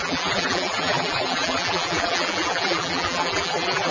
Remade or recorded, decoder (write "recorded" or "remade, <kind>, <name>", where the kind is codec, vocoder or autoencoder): remade, vocoder, BigVGAN v2